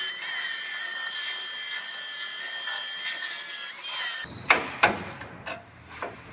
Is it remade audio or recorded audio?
recorded